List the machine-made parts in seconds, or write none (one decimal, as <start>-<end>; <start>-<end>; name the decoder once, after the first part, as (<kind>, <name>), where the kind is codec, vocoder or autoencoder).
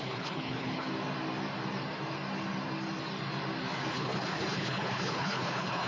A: 0.0-0.9 (codec, HILCodec); 3.9-5.9